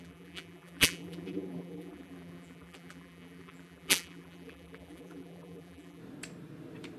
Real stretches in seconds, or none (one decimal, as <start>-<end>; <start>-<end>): 6.0-7.0